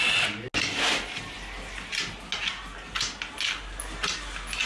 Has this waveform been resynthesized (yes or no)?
no